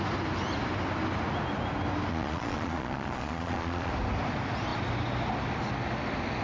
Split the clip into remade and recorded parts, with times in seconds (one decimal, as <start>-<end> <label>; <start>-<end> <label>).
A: 0.0-2.1 recorded; 2.1-3.9 remade; 3.9-6.4 recorded